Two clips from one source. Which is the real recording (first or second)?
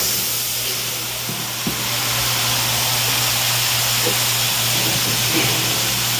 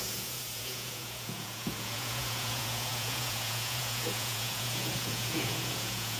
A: first